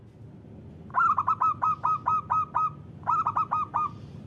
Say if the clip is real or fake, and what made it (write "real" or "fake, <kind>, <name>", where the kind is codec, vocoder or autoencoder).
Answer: real